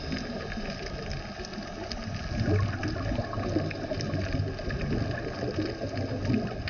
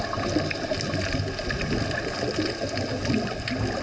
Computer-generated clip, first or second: second